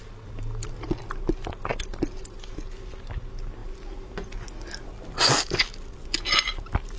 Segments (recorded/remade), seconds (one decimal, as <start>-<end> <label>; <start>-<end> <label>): 0.0-7.0 recorded